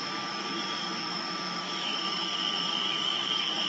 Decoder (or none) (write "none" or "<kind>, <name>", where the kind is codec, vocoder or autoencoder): autoencoder, DAC-VAE